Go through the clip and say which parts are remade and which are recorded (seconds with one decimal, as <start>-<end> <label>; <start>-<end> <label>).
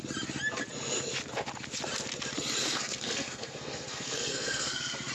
0.0-2.6 recorded; 2.6-5.1 remade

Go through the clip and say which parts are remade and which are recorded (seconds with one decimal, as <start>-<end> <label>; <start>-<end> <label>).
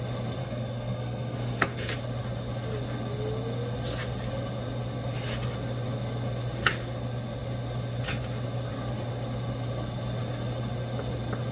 0.0-0.4 recorded; 0.4-1.9 remade; 1.9-11.5 recorded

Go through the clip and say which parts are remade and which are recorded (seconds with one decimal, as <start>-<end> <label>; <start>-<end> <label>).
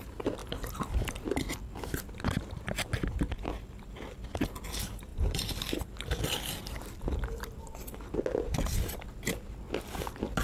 0.0-5.1 recorded; 5.1-7.6 remade; 7.6-10.4 recorded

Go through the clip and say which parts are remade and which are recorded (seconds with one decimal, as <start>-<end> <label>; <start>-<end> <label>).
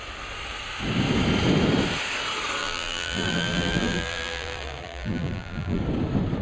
0.0-2.6 recorded; 2.6-5.8 remade; 5.8-6.4 recorded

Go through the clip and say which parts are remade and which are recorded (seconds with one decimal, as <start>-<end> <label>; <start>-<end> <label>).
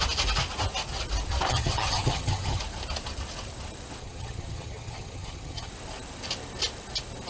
0.0-1.5 recorded; 1.5-2.6 remade; 2.6-4.0 recorded; 4.0-5.7 remade; 5.7-7.3 recorded